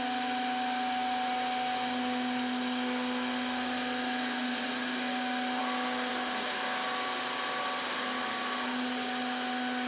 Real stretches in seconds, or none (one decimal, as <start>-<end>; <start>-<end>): 0.0-9.9